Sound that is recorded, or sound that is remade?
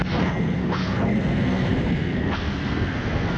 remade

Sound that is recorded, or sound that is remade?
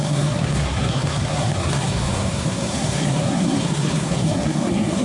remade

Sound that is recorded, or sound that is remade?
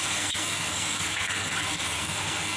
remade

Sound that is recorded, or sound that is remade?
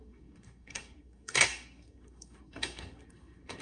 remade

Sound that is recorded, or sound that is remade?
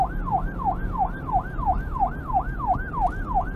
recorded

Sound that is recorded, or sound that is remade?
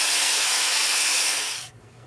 remade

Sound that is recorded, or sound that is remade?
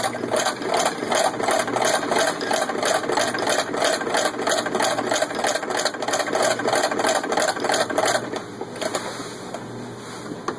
recorded